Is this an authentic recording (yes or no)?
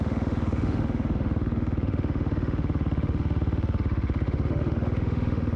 no